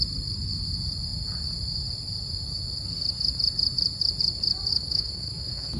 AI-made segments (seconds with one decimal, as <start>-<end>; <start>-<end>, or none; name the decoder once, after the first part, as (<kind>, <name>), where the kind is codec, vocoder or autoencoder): 4.7-5.8 (autoencoder, DAC-VAE)